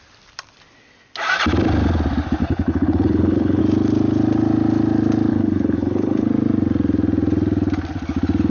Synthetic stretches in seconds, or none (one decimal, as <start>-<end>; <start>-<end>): 2.4-3.6; 5.3-6.3